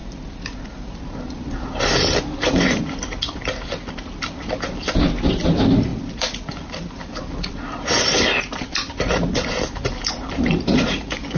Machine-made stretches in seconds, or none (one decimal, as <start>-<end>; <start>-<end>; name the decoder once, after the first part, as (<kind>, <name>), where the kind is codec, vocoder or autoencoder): 0.0-1.4 (vocoder, BigVGAN v2); 5.9-6.5